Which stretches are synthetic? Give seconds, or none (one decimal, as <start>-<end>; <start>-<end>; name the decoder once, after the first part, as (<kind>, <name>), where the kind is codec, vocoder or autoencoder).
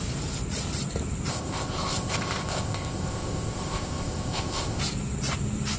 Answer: 1.3-4.8 (codec, ZipCodec)